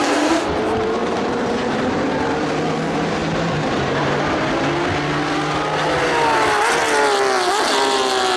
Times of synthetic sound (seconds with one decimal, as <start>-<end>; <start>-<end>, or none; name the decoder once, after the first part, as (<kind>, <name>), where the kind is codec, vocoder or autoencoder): 1.0-1.9 (vocoder, BigVGAN v2); 3.2-4.3